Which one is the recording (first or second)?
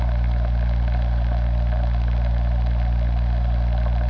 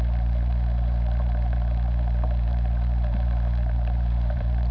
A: first